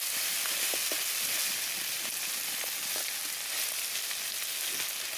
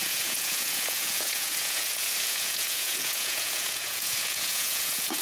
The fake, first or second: second